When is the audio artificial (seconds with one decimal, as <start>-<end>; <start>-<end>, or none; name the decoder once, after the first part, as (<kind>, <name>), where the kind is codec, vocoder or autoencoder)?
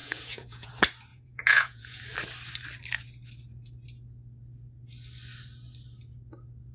0.0-0.7 (vocoder, Vocos); 1.1-2.0